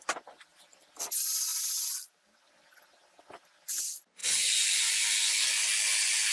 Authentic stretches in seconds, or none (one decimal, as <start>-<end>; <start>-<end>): 0.0-0.5; 1.1-1.5; 2.1-4.2; 4.8-6.3